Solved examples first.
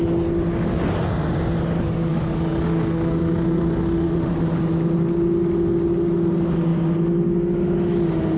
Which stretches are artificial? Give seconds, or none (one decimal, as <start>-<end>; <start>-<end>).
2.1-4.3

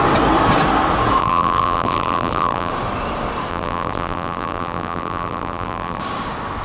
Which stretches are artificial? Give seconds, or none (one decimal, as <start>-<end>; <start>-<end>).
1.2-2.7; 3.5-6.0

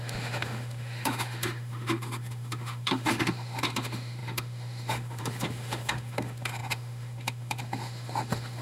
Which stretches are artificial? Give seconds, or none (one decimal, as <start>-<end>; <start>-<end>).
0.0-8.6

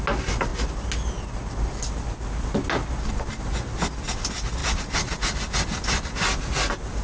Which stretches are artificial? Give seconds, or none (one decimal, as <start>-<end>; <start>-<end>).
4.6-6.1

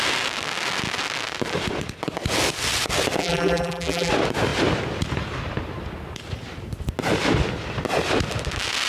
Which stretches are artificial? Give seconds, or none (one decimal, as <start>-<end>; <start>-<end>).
3.2-4.1